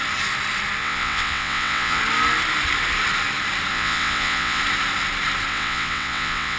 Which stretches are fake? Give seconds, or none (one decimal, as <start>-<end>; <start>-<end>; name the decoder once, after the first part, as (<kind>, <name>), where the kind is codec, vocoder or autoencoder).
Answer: 0.8-2.0 (vocoder, WaveNeXt); 3.7-4.6; 5.5-6.6